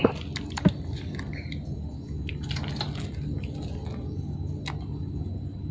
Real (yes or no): yes